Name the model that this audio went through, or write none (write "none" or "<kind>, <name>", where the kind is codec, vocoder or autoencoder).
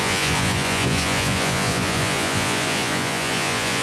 vocoder, Vocos